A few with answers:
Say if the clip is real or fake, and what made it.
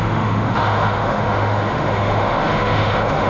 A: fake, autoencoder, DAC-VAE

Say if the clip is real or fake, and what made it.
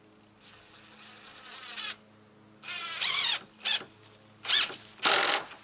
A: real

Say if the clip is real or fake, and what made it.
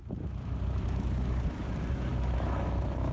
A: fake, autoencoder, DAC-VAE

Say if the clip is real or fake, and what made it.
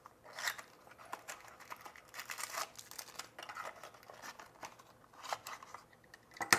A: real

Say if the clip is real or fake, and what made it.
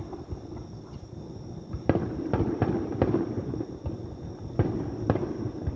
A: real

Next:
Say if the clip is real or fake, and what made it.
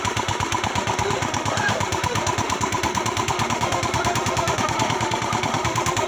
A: fake, autoencoder, DAC-VAE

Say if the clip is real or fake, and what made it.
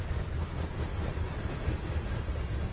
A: real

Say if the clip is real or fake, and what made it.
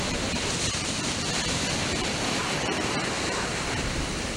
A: fake, vocoder, BigVGAN v2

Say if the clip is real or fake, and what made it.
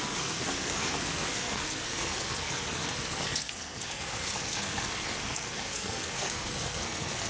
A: fake, codec, SNAC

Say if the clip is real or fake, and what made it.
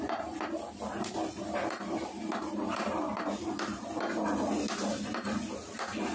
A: real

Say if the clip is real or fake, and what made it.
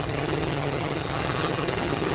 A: fake, vocoder, HiFi-GAN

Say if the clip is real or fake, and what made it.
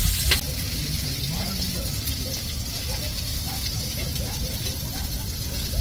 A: real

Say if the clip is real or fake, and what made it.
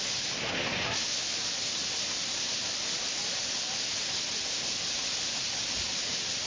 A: real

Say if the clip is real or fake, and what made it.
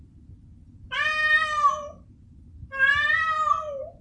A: real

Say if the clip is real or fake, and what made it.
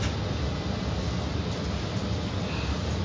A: real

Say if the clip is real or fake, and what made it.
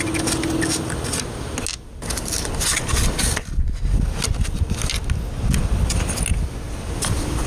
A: real